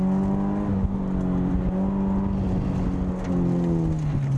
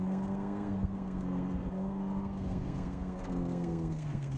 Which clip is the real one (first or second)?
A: first